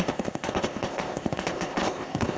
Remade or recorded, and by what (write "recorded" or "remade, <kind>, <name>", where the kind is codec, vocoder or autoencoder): remade, codec, ZipCodec